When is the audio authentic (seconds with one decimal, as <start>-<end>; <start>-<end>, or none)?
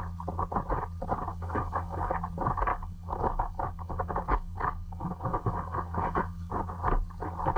0.0-1.3; 2.1-2.7; 6.5-7.6